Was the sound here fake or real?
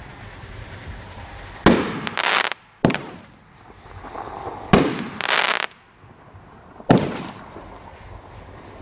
real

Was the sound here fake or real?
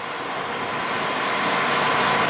real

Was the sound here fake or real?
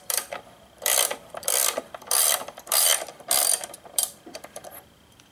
fake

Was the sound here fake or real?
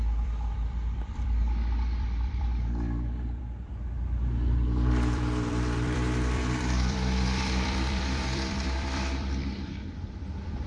fake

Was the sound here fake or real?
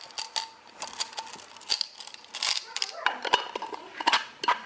real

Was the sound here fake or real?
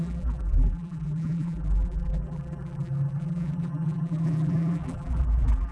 fake